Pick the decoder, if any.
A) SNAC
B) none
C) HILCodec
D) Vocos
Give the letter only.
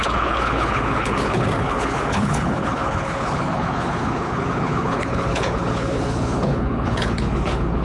C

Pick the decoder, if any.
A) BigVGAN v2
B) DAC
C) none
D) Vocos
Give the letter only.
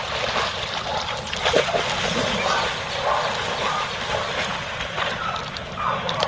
C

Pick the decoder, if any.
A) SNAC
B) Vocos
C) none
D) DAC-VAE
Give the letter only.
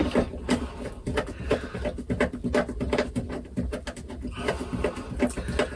C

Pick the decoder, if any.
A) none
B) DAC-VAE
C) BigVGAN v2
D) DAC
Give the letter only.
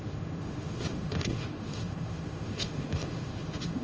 B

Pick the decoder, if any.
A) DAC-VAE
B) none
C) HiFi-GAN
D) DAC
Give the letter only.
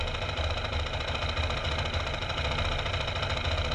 B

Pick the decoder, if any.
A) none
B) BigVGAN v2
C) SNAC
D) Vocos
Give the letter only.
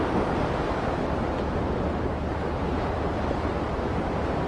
A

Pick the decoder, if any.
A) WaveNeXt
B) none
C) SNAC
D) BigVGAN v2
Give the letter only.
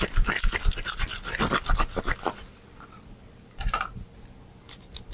B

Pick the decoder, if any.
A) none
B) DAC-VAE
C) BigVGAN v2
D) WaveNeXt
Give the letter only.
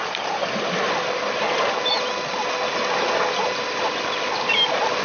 A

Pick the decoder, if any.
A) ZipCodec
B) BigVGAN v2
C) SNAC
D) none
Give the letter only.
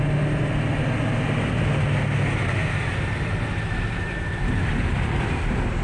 D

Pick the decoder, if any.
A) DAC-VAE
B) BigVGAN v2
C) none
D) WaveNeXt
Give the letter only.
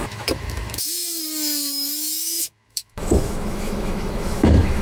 A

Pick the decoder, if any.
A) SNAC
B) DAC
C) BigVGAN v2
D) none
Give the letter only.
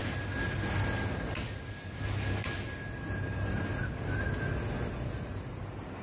D